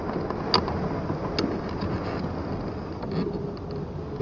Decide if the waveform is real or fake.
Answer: real